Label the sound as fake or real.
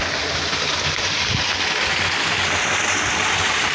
real